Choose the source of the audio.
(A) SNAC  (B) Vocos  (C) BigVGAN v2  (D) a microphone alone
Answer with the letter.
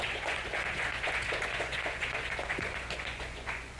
B